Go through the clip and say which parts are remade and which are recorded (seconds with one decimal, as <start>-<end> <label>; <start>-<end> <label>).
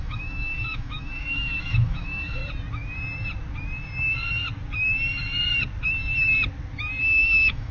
0.0-2.4 remade; 2.4-7.0 recorded; 7.0-7.7 remade